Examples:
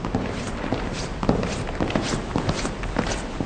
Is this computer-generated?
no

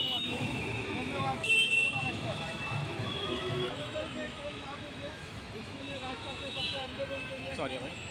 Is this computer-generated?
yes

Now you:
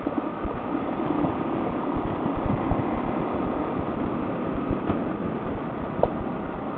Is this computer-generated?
no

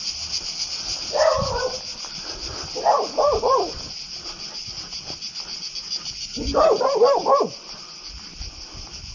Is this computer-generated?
yes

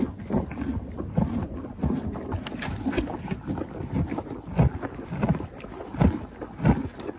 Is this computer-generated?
no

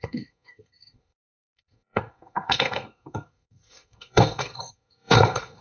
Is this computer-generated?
yes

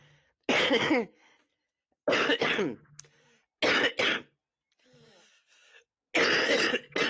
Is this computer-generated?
no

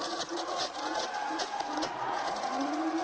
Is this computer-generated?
yes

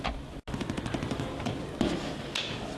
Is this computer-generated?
no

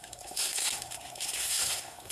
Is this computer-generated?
yes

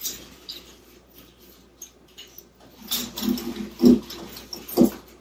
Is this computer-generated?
no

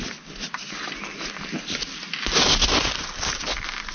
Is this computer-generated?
no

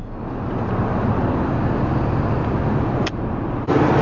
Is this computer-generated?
no